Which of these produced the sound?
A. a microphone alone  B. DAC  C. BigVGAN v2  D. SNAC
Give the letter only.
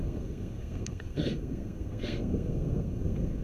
D